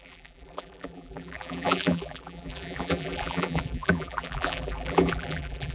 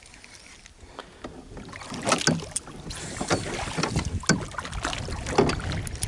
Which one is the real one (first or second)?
second